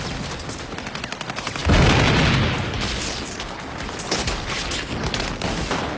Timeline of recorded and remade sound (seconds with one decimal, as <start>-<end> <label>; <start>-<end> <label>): 0.0-6.0 recorded